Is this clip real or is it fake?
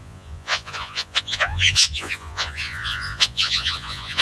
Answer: fake